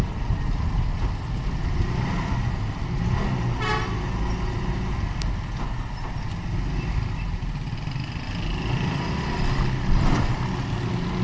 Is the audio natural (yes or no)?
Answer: yes